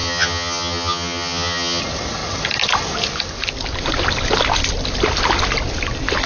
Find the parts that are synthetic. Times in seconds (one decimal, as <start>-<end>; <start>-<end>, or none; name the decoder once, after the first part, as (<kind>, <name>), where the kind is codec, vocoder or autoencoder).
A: 0.0-1.8 (vocoder, HiFi-GAN)

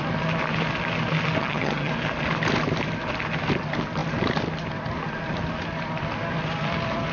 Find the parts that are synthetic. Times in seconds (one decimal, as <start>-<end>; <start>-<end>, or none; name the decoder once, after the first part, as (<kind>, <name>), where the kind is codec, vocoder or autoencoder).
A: 1.4-1.9 (vocoder, HiFi-GAN)

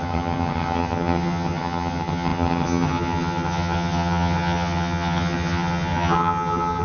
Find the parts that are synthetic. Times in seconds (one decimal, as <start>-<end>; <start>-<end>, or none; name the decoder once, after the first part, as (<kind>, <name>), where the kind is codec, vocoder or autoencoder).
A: 0.0-6.8 (vocoder, HiFi-GAN)